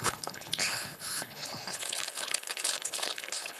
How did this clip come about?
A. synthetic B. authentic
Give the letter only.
A